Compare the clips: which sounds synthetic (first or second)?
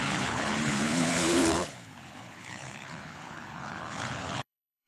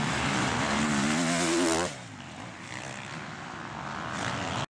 first